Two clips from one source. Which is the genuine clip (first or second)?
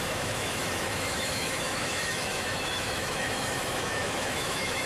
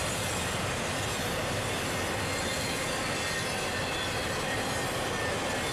second